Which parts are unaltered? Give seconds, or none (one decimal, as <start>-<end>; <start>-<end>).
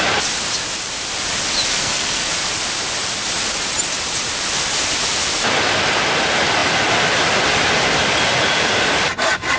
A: 0.0-1.7; 2.3-9.6